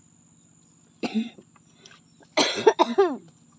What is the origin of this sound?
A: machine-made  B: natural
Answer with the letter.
B